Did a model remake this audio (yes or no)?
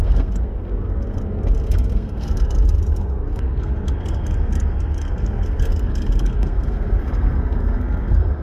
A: yes